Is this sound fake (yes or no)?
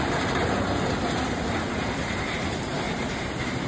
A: yes